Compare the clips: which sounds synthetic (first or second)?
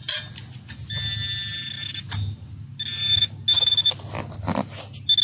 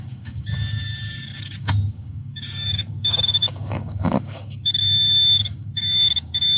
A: second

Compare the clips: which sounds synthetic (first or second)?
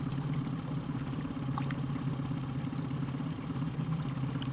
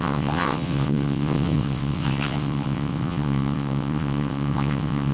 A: second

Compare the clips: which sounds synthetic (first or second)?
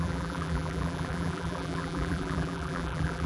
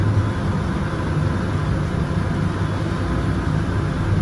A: first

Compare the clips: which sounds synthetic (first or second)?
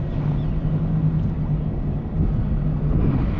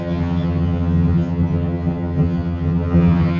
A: second